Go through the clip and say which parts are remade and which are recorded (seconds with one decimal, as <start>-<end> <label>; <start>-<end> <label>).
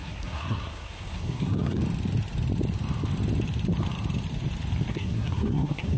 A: 0.0-1.8 remade; 1.8-4.9 recorded; 4.9-6.0 remade